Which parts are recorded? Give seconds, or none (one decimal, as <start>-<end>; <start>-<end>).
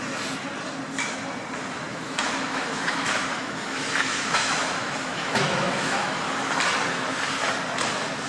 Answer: 0.0-1.9; 6.3-8.3